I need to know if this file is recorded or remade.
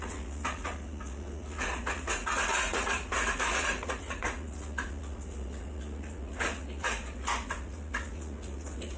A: remade